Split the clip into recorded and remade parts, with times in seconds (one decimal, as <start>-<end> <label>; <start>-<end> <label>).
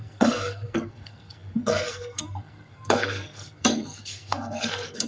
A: 0.0-5.1 remade